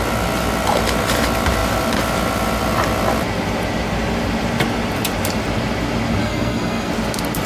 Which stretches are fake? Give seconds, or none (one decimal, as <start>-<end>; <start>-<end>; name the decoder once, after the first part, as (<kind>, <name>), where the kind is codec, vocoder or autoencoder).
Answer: 6.2-6.9 (codec, SNAC)